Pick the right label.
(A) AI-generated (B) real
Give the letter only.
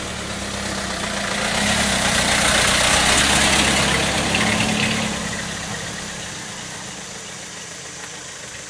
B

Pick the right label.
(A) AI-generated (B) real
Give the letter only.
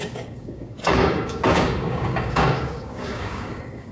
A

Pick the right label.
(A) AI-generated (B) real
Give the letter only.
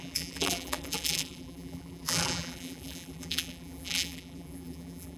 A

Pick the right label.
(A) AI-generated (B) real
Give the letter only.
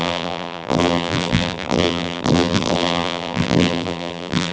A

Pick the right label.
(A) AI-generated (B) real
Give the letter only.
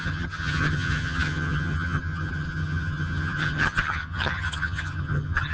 A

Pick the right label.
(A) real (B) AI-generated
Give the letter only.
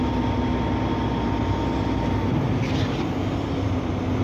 A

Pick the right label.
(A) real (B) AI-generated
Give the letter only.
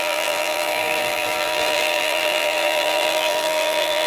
B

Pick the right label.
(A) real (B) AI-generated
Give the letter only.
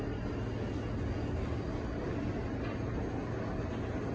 A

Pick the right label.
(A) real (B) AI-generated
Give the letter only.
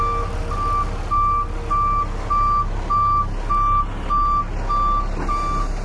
A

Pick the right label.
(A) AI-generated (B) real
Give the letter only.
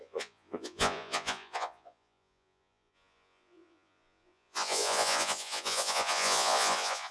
A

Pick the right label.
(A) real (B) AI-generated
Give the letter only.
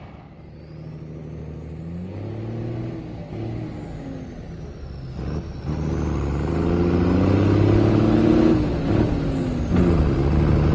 A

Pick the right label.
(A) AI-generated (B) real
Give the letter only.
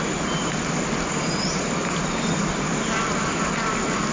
B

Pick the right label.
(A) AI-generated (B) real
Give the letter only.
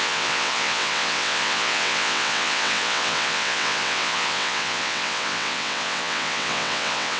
A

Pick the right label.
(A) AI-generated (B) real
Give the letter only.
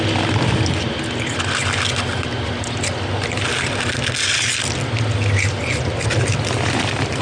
B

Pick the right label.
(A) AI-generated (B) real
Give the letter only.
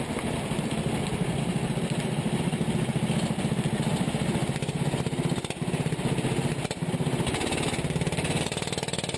B